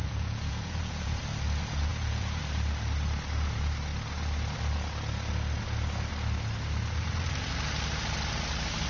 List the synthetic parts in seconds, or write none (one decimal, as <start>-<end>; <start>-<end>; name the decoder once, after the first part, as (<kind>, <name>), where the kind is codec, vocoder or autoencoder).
0.0-1.2 (vocoder, Vocos); 1.9-2.4